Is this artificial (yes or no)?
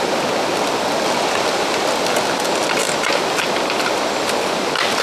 no